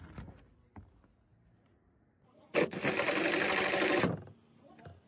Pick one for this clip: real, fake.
real